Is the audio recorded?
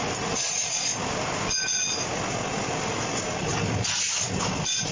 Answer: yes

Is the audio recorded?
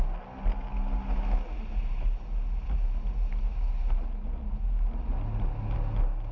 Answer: yes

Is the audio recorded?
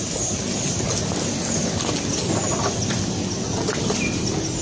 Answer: yes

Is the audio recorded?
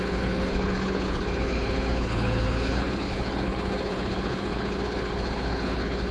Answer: no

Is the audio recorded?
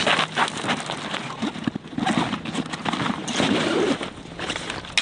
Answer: yes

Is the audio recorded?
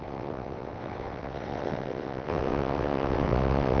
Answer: no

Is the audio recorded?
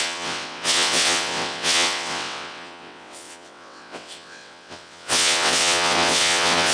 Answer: no